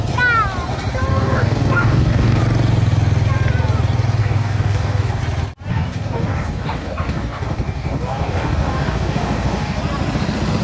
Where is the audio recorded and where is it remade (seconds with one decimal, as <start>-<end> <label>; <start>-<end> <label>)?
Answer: 0.0-1.1 recorded; 1.1-2.4 remade; 2.4-4.2 recorded; 4.2-5.2 remade; 5.2-5.7 recorded; 5.7-9.8 remade; 9.8-10.6 recorded